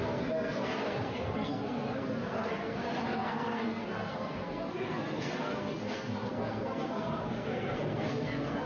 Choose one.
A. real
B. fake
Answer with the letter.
B